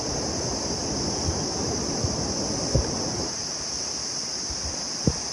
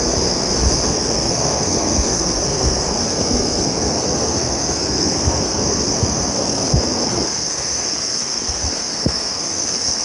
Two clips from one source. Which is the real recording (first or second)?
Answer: first